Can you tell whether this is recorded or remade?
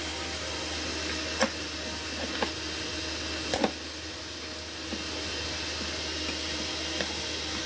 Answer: recorded